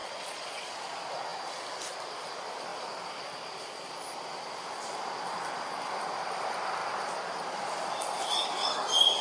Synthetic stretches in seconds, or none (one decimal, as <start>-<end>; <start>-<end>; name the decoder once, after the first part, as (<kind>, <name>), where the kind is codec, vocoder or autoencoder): 0.0-0.7 (vocoder, Vocos)